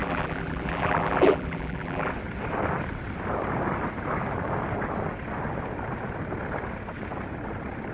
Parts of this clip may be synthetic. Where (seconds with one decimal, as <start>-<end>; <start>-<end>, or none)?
0.0-2.1